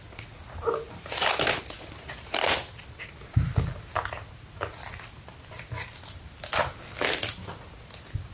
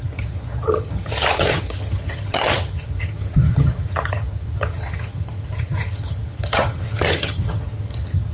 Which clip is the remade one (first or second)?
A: second